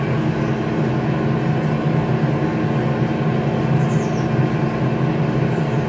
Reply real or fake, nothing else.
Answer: real